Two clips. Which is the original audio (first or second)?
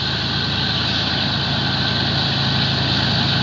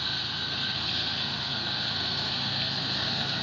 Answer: first